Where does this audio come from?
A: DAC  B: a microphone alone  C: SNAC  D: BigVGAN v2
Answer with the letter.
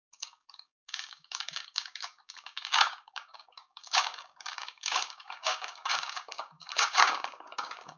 A